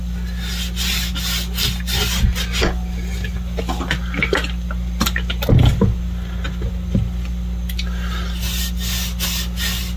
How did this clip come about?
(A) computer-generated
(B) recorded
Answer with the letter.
B